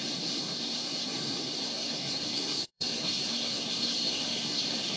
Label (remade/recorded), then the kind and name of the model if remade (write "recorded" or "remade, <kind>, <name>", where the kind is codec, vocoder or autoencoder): remade, codec, SNAC